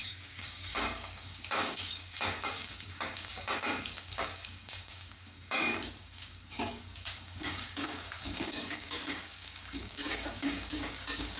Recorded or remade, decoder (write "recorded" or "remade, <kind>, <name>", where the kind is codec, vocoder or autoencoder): remade, codec, DAC